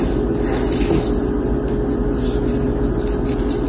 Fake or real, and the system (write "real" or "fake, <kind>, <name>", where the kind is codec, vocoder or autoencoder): real